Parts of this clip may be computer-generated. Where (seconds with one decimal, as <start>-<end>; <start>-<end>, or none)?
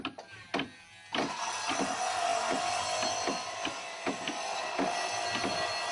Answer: none